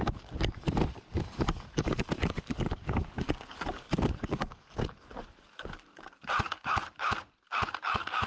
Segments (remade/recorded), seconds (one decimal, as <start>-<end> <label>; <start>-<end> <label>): 0.0-7.1 remade; 7.1-7.7 recorded; 7.7-8.3 remade